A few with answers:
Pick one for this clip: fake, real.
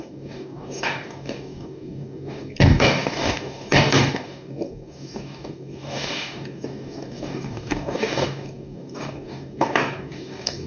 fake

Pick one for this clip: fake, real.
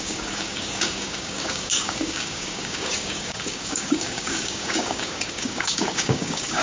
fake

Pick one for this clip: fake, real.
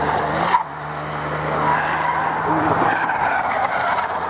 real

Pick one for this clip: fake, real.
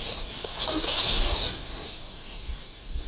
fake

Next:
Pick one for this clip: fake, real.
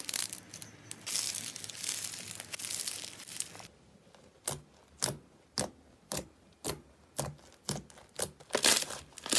real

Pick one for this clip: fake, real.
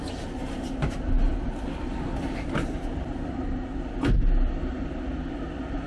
real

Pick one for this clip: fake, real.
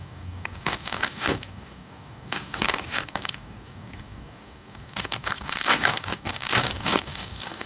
fake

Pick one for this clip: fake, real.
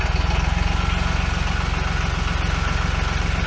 real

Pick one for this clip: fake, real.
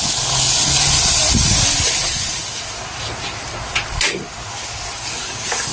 real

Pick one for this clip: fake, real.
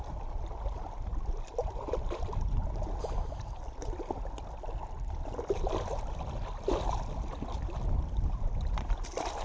real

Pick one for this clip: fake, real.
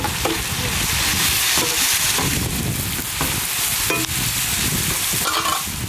real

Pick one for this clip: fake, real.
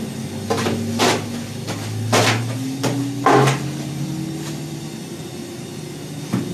real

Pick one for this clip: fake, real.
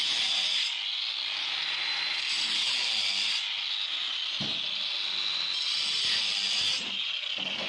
real